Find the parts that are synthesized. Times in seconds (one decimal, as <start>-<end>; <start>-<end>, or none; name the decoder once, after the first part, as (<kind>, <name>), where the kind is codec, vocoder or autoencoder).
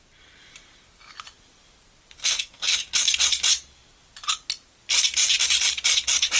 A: 2.2-2.8 (codec, SNAC)